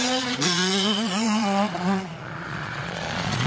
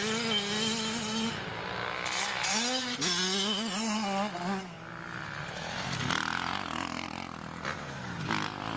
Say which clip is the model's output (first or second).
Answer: first